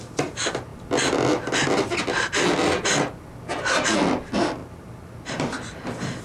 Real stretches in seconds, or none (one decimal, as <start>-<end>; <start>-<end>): 0.0-6.2